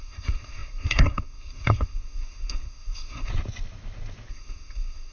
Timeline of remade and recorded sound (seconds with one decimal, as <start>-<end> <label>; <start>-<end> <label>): 0.0-3.3 remade; 3.3-4.3 recorded; 4.3-5.1 remade